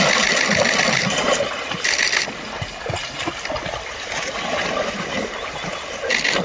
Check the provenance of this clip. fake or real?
real